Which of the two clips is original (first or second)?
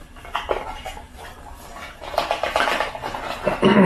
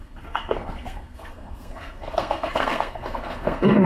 first